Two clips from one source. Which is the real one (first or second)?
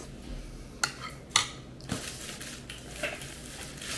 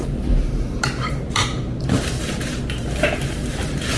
first